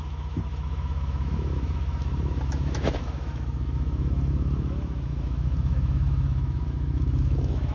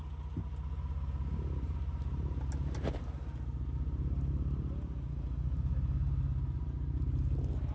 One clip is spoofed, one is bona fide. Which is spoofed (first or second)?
first